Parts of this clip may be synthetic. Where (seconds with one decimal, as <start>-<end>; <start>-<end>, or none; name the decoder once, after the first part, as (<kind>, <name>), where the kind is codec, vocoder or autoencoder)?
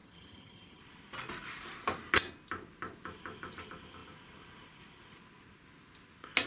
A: 0.0-0.8 (vocoder, HiFi-GAN)